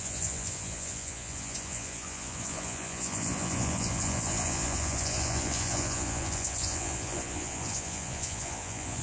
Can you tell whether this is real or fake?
fake